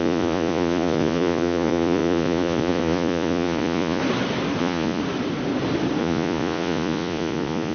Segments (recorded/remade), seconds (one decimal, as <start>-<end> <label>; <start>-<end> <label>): 0.0-4.0 remade; 4.0-4.6 recorded; 4.6-5.0 remade; 5.0-6.0 recorded; 6.0-7.7 remade